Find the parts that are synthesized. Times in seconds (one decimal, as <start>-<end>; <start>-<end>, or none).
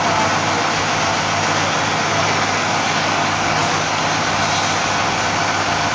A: 2.1-4.0